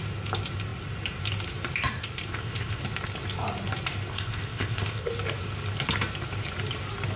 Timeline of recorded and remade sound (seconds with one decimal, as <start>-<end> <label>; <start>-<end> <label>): 0.0-2.3 recorded; 2.3-2.8 remade; 2.8-4.1 recorded; 4.1-5.1 remade; 5.1-7.2 recorded